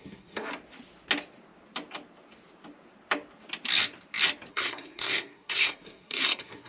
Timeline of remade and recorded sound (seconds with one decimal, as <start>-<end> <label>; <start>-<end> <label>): 0.0-0.5 remade; 0.5-4.5 recorded; 4.5-6.7 remade